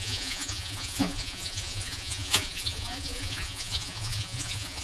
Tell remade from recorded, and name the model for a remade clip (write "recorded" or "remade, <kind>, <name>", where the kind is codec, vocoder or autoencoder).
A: remade, vocoder, Vocos